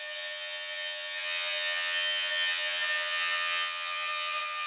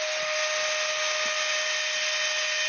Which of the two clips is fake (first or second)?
first